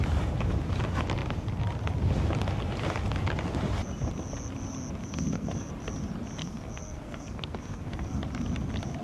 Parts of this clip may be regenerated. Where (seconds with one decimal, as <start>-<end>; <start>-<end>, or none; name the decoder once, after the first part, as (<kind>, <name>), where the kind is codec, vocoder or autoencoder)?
5.0-5.7 (codec, SNAC); 6.4-8.2